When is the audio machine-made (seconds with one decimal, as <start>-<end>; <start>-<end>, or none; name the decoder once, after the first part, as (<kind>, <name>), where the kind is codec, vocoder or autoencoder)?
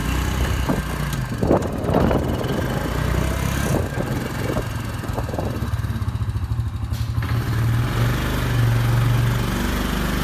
0.0-0.8 (vocoder, BigVGAN v2); 3.7-5.8